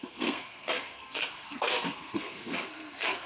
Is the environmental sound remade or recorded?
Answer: remade